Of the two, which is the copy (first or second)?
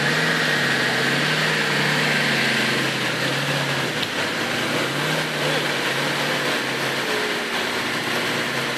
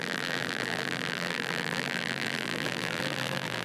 second